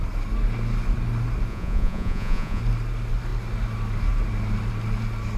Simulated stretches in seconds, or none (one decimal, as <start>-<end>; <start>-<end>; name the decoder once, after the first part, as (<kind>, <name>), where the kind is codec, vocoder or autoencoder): 1.5-2.6 (vocoder, Vocos)